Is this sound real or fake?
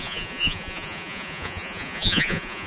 fake